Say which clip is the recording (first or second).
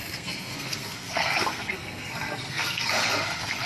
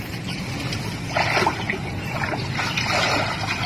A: second